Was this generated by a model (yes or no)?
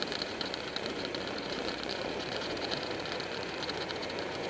yes